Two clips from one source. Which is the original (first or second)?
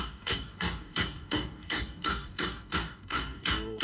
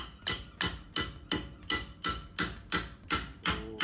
second